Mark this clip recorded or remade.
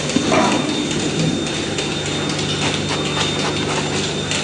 recorded